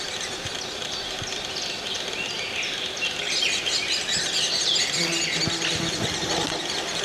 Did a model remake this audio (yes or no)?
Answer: no